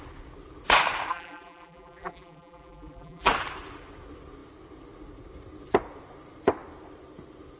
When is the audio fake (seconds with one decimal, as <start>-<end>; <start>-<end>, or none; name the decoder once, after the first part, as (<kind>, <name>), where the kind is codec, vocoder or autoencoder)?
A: 1.1-3.3 (vocoder, BigVGAN v2)